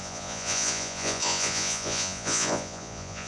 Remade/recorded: remade